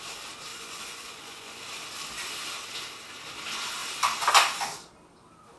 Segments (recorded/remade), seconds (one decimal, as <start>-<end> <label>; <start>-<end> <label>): 0.0-0.5 recorded; 0.5-1.6 remade; 1.6-5.6 recorded